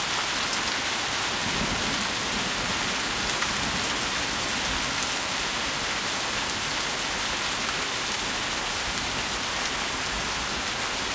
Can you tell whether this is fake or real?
real